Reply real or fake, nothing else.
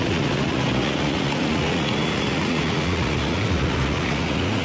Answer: fake